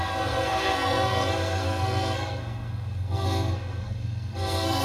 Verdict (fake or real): fake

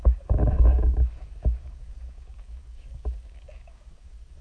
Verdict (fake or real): fake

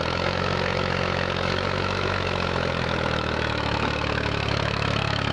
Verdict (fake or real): fake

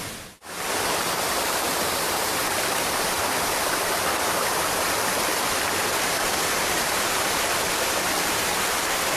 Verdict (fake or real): fake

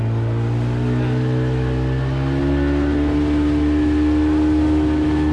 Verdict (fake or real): real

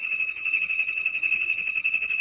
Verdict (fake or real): fake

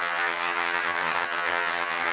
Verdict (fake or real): fake